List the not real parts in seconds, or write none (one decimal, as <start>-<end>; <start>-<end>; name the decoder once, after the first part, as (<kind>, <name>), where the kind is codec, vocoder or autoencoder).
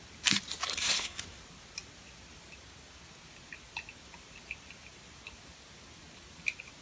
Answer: 0.7-1.2 (codec, SNAC)